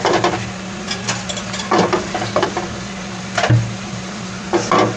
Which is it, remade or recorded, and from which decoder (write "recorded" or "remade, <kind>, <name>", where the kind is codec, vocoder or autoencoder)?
recorded